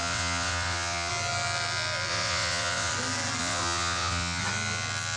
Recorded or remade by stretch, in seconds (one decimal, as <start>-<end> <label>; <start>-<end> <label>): 0.0-1.1 remade; 1.1-2.1 recorded; 2.1-2.9 remade; 2.9-3.4 recorded; 3.4-4.4 remade; 4.4-5.2 recorded